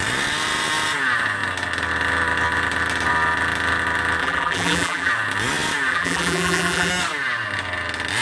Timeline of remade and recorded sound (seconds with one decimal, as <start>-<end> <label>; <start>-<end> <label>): 0.0-4.2 recorded; 4.2-5.1 remade; 5.1-5.9 recorded; 5.9-6.9 remade; 6.9-8.2 recorded